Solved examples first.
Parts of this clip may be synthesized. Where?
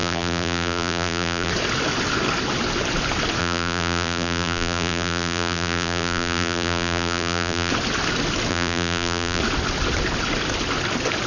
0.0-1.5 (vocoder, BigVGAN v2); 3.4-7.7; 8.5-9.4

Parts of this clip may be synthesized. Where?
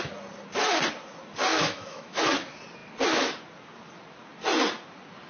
1.5-2.2 (autoencoder, DAC-VAE)